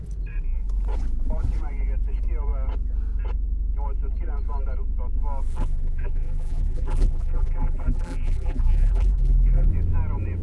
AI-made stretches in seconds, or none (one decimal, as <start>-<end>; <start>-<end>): 5.5-9.7